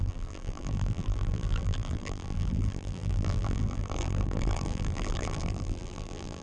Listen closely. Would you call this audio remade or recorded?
remade